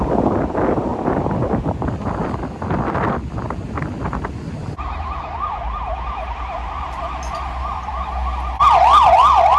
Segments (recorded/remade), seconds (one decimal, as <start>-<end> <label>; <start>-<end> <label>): 0.0-9.6 recorded